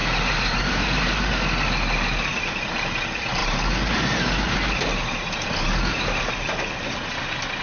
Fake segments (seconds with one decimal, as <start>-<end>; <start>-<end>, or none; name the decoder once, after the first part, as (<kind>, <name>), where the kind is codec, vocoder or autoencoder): 0.0-1.3 (vocoder, BigVGAN v2); 3.4-6.3